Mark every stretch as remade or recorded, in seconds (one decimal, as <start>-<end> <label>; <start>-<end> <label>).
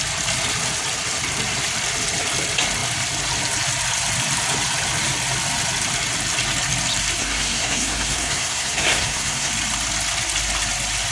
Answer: 0.0-7.2 recorded; 7.2-9.5 remade; 9.5-11.1 recorded